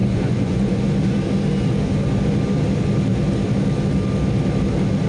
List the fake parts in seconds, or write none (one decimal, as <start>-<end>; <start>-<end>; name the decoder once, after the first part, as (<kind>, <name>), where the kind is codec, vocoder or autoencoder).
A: 0.0-0.8 (vocoder, Vocos)